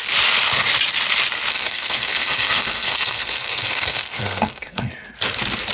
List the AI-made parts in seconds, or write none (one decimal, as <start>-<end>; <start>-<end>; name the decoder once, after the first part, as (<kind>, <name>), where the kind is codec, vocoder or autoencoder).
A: 1.5-4.9 (codec, SNAC)